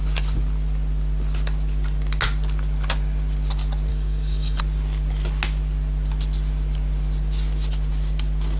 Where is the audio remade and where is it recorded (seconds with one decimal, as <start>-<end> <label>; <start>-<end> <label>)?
0.0-3.9 recorded; 3.9-4.6 remade; 4.6-8.6 recorded